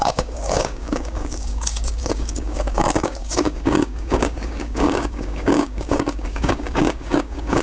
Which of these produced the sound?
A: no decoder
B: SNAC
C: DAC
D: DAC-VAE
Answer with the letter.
C